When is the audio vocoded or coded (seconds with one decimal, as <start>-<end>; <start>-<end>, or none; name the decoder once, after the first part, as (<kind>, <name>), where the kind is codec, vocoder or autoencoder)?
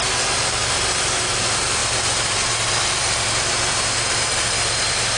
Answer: none